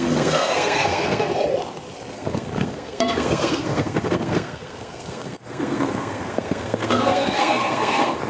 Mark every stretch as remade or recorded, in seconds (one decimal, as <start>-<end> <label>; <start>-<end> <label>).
0.0-1.3 remade; 1.3-2.1 recorded; 2.1-8.3 remade